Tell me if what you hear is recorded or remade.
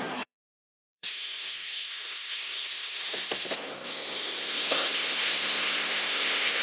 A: remade